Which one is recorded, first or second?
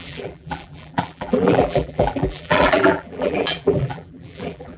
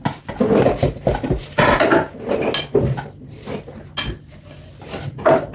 second